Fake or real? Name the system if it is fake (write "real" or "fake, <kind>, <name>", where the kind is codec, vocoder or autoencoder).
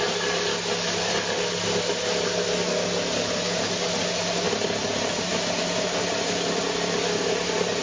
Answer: real